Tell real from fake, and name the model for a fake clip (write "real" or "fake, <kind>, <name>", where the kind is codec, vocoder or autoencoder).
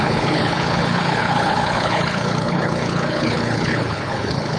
fake, codec, HILCodec